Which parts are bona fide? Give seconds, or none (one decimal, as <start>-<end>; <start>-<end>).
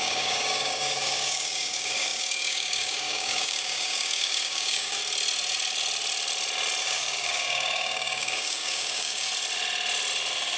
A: 5.0-6.8; 9.3-10.6